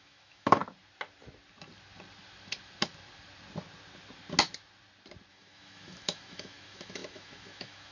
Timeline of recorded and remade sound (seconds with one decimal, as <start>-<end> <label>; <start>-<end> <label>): 0.0-0.6 remade; 0.6-5.3 recorded; 5.3-7.9 remade